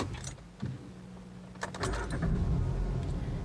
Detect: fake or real real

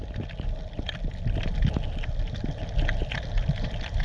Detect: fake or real real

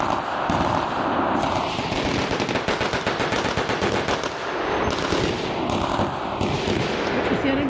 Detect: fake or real real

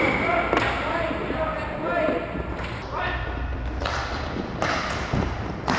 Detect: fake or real real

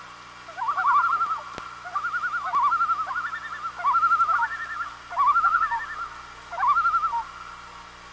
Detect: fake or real real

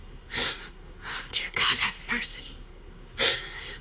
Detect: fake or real fake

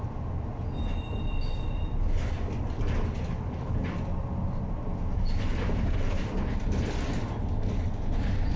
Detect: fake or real real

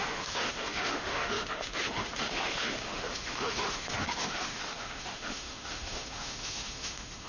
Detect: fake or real fake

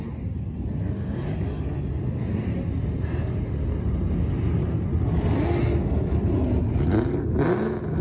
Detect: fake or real real